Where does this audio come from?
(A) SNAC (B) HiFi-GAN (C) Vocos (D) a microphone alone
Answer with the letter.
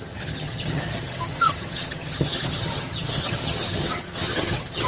B